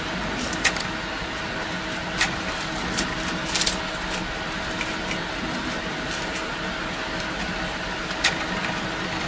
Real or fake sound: real